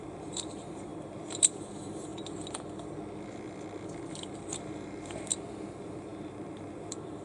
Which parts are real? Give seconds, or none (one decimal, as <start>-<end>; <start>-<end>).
2.1-4.5